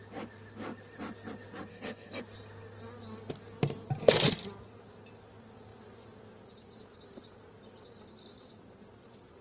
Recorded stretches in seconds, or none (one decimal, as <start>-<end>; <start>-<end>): 0.0-1.7; 2.2-9.4